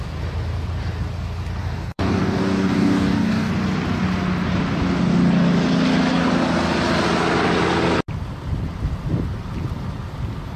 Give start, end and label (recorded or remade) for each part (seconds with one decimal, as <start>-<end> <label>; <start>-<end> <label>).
0.0-1.6 recorded; 1.6-3.5 remade; 3.5-10.6 recorded